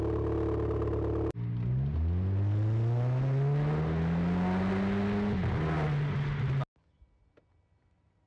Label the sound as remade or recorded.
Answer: recorded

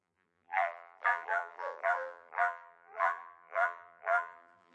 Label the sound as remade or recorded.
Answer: remade